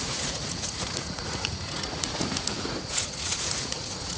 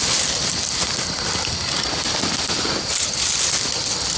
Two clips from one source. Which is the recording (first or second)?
second